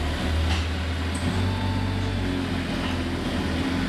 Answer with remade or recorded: recorded